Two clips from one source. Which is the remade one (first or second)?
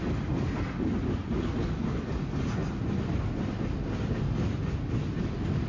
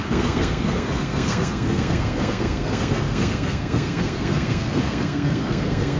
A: second